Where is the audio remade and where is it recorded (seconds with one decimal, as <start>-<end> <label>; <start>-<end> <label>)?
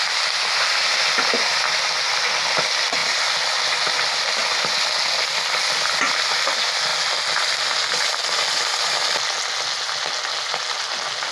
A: 0.0-11.3 recorded